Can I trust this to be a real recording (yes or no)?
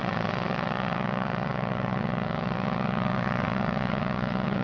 no